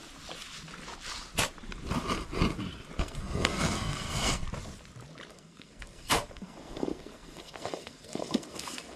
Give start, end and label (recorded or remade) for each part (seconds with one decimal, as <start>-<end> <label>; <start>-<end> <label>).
0.0-3.0 recorded; 3.0-4.4 remade; 4.4-5.3 recorded; 5.3-9.0 remade